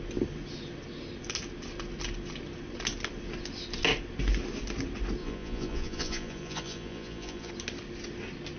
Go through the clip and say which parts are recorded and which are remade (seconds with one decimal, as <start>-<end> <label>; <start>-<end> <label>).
0.0-5.2 recorded; 5.2-7.5 remade; 7.5-8.6 recorded